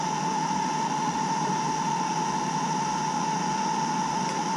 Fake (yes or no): no